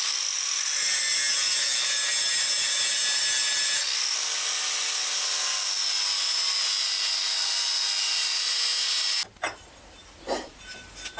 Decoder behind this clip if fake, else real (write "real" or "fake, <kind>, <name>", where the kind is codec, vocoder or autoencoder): real